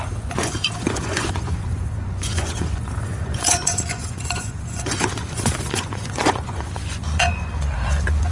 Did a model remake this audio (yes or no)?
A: yes